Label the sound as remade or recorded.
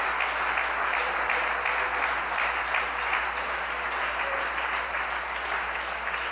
recorded